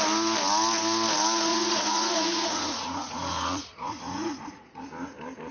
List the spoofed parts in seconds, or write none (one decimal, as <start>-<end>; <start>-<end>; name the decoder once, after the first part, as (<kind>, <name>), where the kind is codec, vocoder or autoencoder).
1.5-4.8 (vocoder, Vocos)